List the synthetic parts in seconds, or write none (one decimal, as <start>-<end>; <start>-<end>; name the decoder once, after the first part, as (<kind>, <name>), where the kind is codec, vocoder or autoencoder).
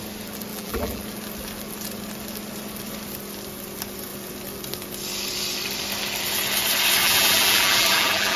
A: 0.5-1.0 (vocoder, BigVGAN v2); 7.0-8.4